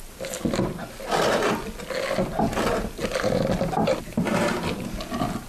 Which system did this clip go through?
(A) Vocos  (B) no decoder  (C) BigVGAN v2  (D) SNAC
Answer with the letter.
B